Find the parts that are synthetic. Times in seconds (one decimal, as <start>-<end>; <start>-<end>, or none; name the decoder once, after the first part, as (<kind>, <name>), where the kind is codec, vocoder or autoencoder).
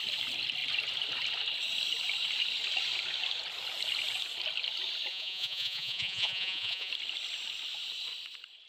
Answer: 5.1-6.9 (vocoder, Vocos)